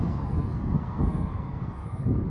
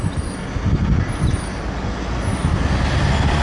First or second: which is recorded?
second